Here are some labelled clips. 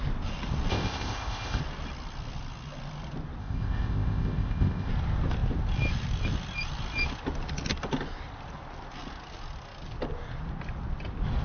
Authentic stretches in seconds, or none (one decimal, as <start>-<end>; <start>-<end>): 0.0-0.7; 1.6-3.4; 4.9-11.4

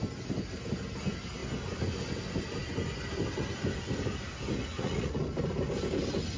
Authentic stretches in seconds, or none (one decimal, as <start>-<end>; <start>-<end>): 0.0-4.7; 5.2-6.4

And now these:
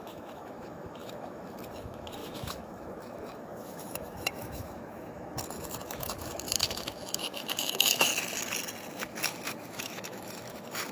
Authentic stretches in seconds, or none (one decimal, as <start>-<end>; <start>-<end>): 8.1-8.9

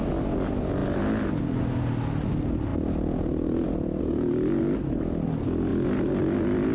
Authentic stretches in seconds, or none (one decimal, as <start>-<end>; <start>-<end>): 0.0-6.7

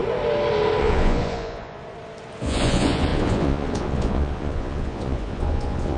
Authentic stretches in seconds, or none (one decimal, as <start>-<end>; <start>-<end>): 0.0-0.8; 1.8-2.4